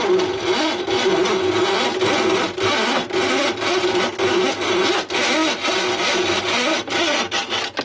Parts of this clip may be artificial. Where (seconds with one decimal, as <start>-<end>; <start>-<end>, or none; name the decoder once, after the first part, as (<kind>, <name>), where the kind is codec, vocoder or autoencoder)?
none